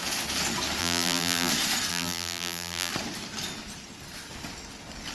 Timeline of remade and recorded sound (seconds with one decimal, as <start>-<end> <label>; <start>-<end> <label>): 0.0-0.8 recorded; 0.8-1.5 remade; 1.5-1.9 recorded; 1.9-2.9 remade; 2.9-5.1 recorded